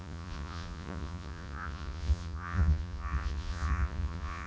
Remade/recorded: remade